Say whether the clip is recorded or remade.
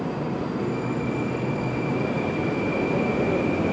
recorded